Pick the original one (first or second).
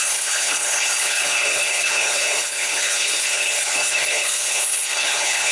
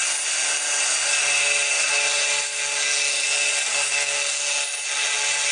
second